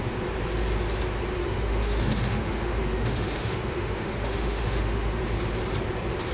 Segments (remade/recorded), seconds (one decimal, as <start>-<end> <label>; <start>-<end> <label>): 0.0-1.4 recorded; 1.4-5.2 remade; 5.2-6.3 recorded